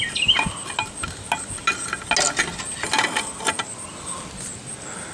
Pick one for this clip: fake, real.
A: real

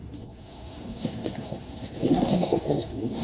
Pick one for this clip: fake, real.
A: fake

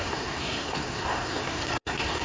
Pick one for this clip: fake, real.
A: fake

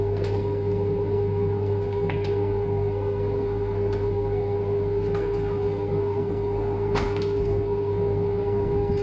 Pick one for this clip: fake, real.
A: fake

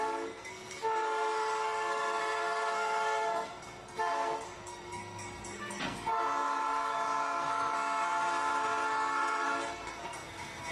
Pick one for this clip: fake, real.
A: fake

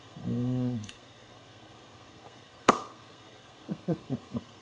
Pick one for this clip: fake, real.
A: fake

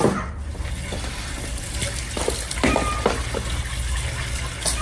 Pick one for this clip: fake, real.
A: real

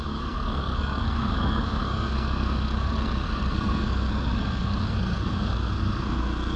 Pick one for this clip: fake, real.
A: fake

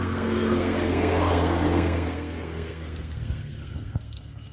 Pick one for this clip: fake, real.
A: fake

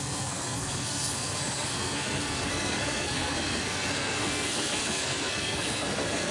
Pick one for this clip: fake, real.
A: fake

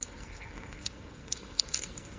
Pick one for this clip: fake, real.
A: fake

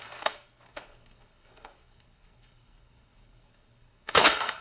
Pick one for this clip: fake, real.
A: fake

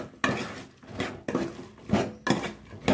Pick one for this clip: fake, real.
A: real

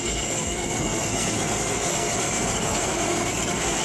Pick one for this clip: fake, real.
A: fake